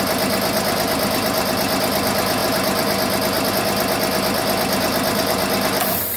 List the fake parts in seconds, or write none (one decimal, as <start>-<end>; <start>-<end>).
none